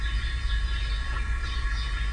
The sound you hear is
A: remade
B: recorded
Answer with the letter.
A